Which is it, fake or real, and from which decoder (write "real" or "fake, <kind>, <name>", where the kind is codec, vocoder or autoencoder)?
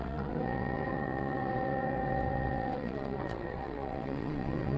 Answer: fake, vocoder, WaveNeXt